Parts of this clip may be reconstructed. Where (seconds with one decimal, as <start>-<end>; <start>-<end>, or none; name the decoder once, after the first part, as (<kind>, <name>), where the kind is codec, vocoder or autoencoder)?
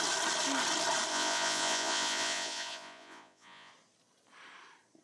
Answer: 1.1-3.7 (vocoder, Vocos)